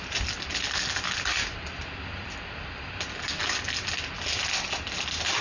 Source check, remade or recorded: recorded